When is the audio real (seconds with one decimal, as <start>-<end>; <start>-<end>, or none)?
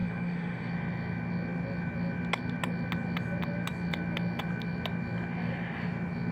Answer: 0.7-6.3